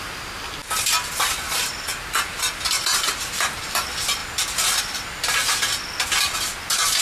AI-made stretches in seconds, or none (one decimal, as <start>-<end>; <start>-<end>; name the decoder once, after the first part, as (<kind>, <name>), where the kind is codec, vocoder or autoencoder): 1.9-3.7 (vocoder, BigVGAN v2); 4.2-4.8